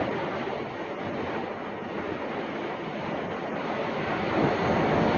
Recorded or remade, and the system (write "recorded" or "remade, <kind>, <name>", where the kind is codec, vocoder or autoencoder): recorded